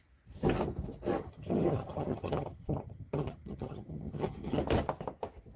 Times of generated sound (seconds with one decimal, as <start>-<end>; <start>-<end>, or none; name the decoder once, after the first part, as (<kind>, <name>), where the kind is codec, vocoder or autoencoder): 1.2-4.6 (vocoder, HiFi-GAN)